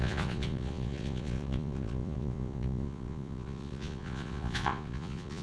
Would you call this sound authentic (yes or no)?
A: no